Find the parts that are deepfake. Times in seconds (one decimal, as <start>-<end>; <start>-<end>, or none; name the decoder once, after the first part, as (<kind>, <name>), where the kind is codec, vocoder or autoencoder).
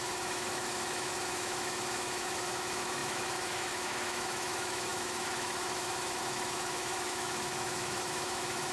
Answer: 0.0-8.7 (autoencoder, DAC-VAE)